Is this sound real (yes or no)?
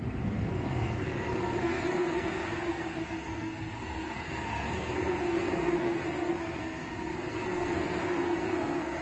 no